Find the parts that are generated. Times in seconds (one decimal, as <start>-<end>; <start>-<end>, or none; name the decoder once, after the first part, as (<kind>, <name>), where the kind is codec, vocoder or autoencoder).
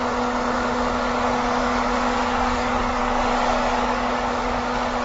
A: 1.6-4.6 (codec, DAC)